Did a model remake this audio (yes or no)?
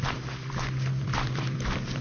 yes